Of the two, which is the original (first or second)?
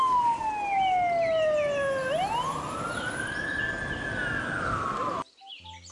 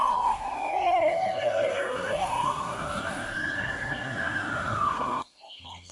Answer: first